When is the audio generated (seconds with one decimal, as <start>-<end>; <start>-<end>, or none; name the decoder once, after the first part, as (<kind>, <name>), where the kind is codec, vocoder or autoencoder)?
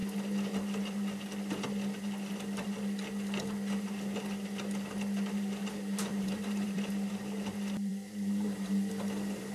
6.1-6.9 (vocoder, BigVGAN v2); 7.9-8.9